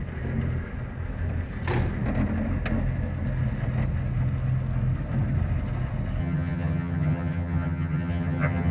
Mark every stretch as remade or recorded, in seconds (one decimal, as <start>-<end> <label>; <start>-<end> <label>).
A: 0.0-6.2 recorded; 6.2-8.7 remade